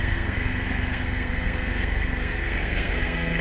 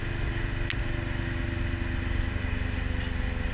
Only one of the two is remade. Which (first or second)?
first